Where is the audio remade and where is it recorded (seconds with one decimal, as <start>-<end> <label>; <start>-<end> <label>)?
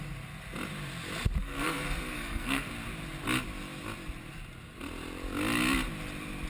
0.0-1.4 recorded; 1.4-2.7 remade; 2.7-6.5 recorded